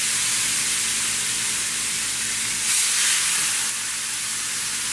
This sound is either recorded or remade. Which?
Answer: recorded